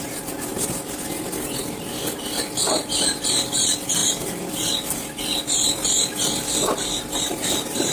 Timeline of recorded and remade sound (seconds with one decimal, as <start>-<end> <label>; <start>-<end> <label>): 0.0-0.5 remade; 0.5-2.4 recorded; 2.4-7.9 remade